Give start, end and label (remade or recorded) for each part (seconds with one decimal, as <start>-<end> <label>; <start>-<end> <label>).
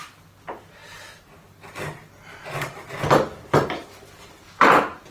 0.0-5.1 recorded